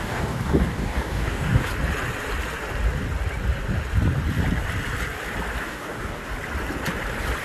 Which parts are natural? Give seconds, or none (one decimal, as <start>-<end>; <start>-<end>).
1.7-5.6; 6.2-7.4